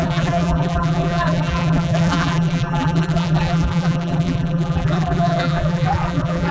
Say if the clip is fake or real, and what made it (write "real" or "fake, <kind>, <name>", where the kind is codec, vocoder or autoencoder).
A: fake, vocoder, BigVGAN v2